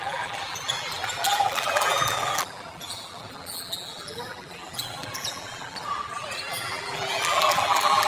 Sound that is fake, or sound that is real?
fake